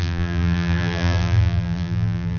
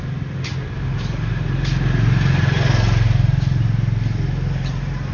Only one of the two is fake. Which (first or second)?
first